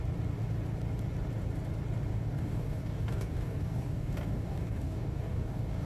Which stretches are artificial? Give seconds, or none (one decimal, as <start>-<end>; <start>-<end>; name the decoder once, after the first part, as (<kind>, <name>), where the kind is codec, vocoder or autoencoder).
2.1-5.9 (codec, DAC)

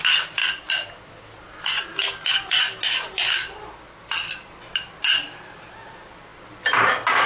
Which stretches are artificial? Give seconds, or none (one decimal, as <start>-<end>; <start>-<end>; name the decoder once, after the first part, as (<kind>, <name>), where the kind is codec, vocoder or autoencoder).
none